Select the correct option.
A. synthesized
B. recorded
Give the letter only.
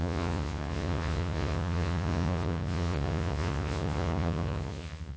A